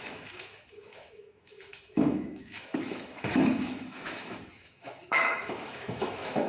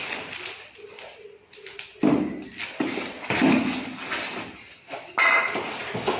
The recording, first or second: second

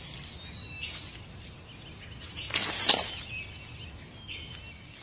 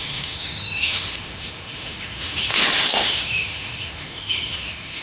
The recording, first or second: first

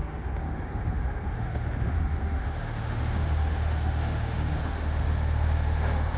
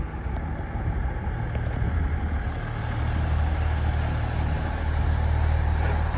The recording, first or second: second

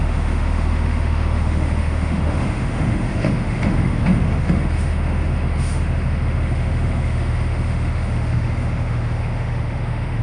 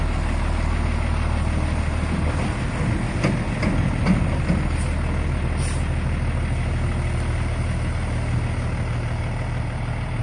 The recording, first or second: second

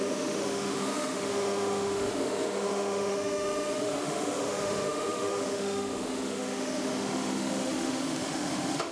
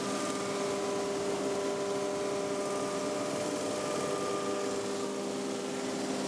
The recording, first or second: second